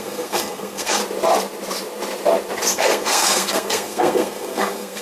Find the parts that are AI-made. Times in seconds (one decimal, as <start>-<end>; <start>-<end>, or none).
0.0-1.0; 2.7-5.0